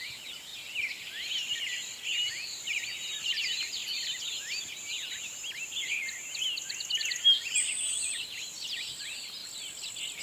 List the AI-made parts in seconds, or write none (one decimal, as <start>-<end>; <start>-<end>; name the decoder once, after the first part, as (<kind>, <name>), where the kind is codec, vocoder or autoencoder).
0.0-0.5 (vocoder, BigVGAN v2); 2.3-3.8; 7.4-9.4